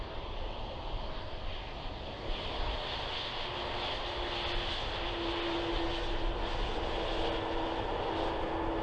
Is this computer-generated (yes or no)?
no